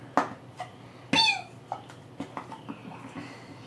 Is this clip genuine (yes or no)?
yes